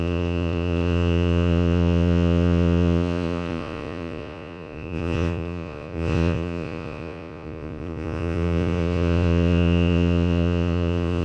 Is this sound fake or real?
fake